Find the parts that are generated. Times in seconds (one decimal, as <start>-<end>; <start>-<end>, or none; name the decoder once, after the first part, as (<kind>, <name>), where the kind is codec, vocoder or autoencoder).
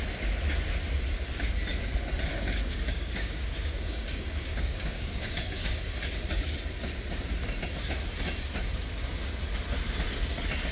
2.3-6.0 (codec, DAC)